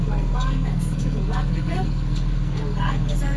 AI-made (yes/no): yes